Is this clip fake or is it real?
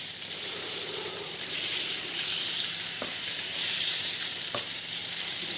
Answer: fake